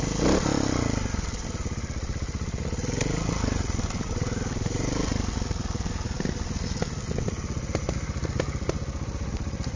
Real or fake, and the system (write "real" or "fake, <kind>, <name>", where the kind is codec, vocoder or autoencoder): real